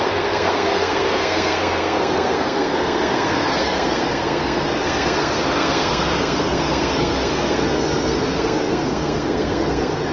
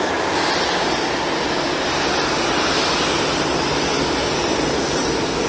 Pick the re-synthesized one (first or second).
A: first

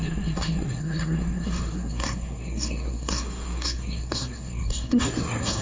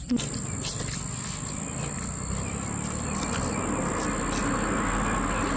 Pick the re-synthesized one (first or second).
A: first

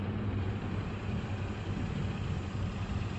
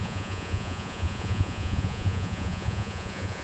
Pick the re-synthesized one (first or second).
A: second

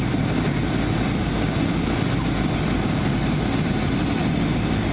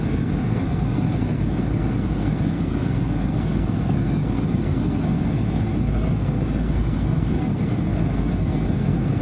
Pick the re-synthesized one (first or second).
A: second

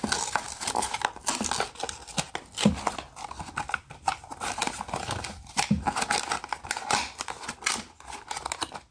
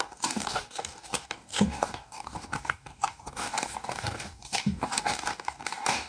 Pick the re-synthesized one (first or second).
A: second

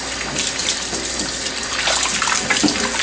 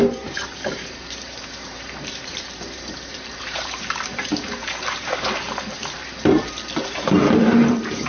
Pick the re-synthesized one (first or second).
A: second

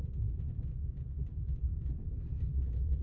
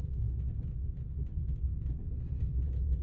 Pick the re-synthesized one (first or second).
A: first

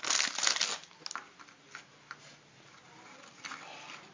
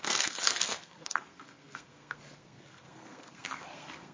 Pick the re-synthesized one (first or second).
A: second